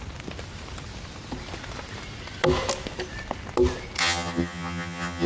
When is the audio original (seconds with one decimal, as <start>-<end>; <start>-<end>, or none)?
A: 0.0-4.0